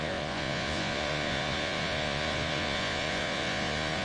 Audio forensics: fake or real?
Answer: fake